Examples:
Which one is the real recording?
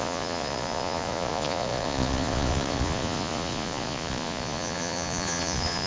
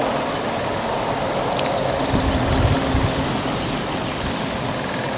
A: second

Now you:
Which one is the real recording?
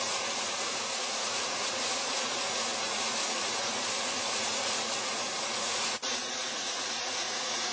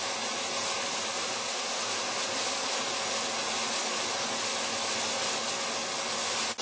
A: second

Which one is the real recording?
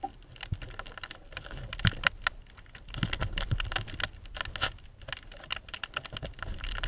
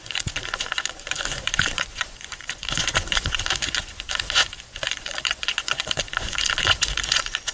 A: first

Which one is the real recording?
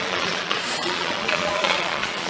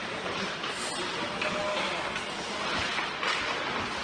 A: second